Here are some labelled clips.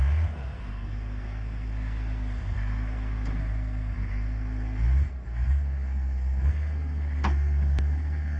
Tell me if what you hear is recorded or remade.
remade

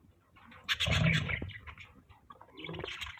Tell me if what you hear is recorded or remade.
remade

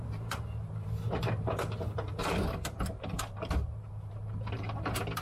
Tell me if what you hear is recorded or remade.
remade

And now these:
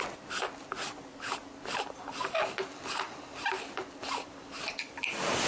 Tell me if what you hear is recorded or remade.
recorded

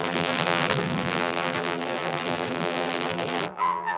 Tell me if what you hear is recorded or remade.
remade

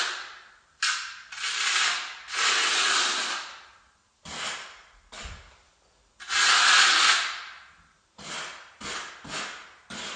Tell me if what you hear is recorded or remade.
recorded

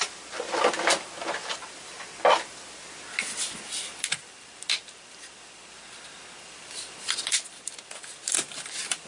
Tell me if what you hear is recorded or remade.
recorded